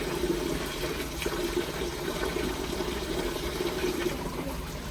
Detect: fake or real fake